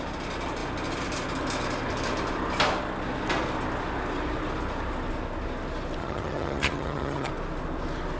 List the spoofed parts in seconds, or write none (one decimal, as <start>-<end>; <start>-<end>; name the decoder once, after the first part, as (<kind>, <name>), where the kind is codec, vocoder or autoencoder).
6.0-7.3 (vocoder, HiFi-GAN)